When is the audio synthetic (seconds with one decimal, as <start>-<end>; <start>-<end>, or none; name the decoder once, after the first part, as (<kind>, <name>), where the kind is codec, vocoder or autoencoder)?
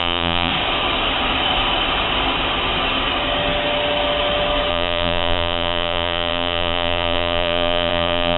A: 0.0-0.5 (vocoder, Vocos); 4.7-8.4